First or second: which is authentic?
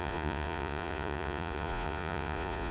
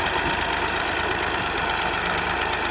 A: second